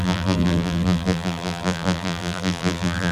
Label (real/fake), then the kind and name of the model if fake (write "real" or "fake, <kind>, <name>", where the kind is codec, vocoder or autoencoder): fake, vocoder, BigVGAN v2